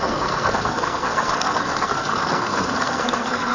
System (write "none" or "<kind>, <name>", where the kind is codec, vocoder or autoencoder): codec, SNAC